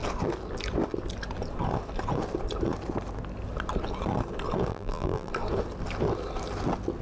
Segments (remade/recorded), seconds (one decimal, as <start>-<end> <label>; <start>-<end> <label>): 0.0-4.7 recorded; 4.7-5.3 remade; 5.3-7.0 recorded